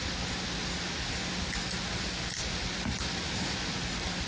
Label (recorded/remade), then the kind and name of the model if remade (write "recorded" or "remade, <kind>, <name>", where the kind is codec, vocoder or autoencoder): recorded